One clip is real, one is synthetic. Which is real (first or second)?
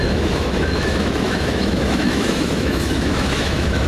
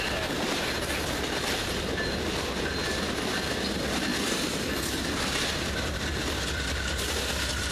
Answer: second